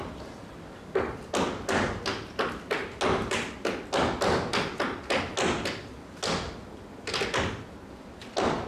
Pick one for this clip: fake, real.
real